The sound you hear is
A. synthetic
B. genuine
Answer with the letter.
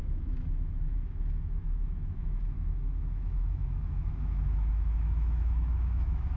A